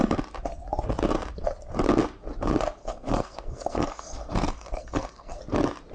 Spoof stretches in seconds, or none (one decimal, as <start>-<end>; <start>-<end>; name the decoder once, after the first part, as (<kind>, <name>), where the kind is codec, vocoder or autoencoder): 2.8-5.4 (codec, SNAC)